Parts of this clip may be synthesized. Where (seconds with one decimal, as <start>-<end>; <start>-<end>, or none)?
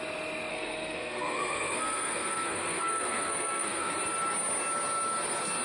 0.5-3.9